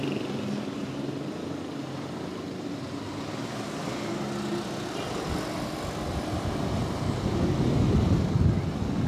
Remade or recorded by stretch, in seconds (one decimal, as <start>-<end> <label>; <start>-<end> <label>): 0.0-9.1 recorded